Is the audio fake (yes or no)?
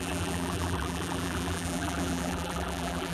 yes